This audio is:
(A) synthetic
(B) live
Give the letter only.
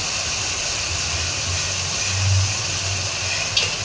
B